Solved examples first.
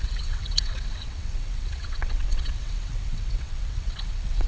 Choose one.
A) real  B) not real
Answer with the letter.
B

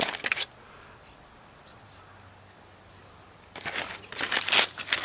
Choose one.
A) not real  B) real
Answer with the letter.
B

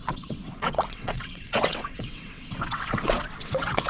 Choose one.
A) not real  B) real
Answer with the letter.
A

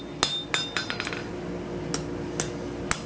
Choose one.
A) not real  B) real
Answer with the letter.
B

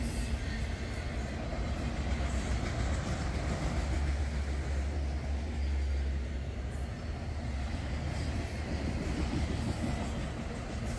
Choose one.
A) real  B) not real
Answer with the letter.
A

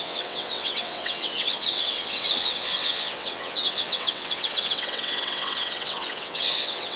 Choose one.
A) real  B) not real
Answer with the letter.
B